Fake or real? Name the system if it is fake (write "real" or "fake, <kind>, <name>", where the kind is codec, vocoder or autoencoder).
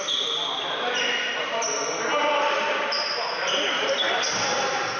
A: real